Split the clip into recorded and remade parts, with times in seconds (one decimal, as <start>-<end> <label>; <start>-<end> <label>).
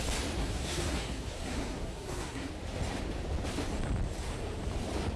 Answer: 0.0-0.4 recorded; 0.4-2.5 remade; 2.5-5.2 recorded